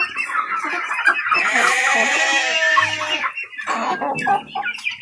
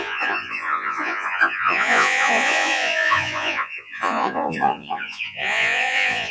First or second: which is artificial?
second